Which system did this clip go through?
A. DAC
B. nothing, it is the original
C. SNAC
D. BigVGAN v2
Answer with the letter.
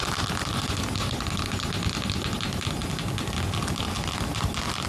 B